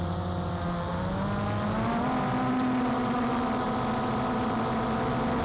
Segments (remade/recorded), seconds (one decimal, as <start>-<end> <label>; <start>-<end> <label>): 0.0-5.4 recorded